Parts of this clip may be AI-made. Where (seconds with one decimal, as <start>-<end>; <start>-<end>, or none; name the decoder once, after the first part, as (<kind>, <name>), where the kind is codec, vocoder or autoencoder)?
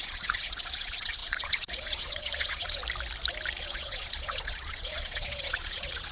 0.0-2.8 (vocoder, Vocos); 3.6-6.1